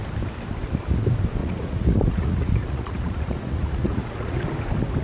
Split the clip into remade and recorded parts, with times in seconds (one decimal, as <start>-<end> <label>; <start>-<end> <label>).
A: 0.0-1.4 recorded; 1.4-4.4 remade; 4.4-5.0 recorded